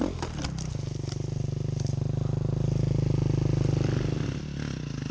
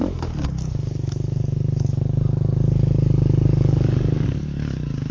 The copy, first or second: second